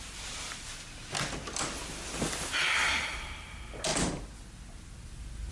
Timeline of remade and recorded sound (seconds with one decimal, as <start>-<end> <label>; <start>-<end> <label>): 0.0-5.5 recorded